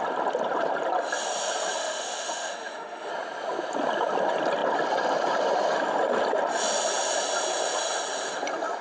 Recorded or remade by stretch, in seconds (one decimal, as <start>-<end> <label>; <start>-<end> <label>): 0.0-1.7 recorded; 1.7-3.1 remade; 3.1-8.8 recorded